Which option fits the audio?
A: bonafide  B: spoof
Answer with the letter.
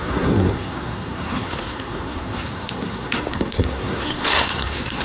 B